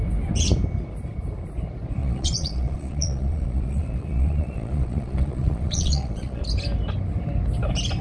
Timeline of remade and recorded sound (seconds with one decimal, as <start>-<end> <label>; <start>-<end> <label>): 0.0-2.0 recorded; 2.0-6.4 remade; 6.4-8.0 recorded